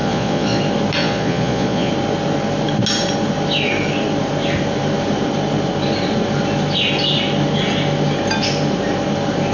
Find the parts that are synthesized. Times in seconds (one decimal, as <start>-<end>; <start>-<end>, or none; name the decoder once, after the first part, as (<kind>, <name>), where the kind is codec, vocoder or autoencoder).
0.0-0.6 (vocoder, Vocos); 1.0-1.9